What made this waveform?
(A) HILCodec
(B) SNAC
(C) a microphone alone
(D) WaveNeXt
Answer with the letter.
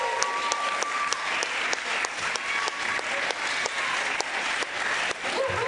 C